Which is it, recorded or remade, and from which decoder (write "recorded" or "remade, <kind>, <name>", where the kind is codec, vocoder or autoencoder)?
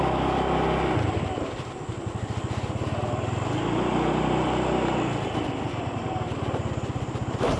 recorded